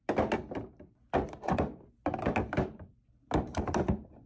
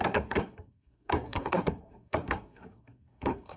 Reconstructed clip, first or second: second